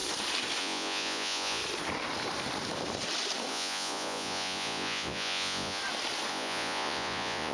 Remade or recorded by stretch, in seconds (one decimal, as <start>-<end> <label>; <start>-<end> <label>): 0.0-0.6 recorded; 0.6-1.6 remade; 1.6-3.5 recorded; 3.5-5.8 remade; 5.8-6.3 recorded; 6.3-7.5 remade